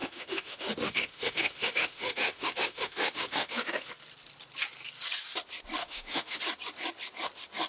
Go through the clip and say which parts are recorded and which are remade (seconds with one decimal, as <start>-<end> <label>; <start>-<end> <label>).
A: 0.0-3.9 remade; 3.9-5.8 recorded; 5.8-6.4 remade; 6.4-7.7 recorded